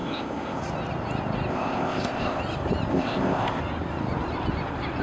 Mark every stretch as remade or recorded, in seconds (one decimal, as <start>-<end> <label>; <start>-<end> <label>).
0.0-0.6 remade; 0.6-1.5 recorded; 1.5-2.4 remade; 2.4-2.9 recorded; 2.9-3.6 remade; 3.6-5.0 recorded